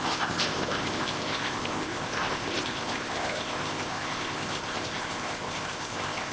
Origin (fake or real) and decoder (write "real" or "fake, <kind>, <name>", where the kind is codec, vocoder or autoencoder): fake, codec, ZipCodec